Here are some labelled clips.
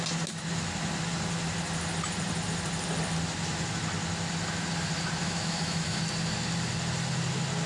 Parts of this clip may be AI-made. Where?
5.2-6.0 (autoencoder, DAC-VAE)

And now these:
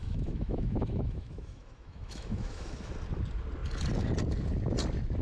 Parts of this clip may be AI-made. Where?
0.0-2.9 (autoencoder, DAC-VAE)

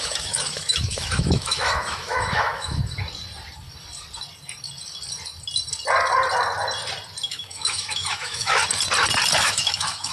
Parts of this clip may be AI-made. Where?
0.0-2.8 (autoencoder, DAC-VAE); 7.3-8.6; 9.4-10.1

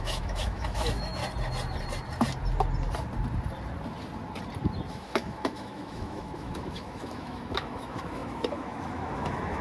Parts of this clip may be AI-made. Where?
0.0-1.2 (autoencoder, DAC-VAE); 4.9-9.6

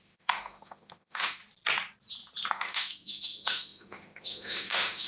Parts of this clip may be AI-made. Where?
0.0-1.4 (autoencoder, DAC-VAE); 2.5-5.1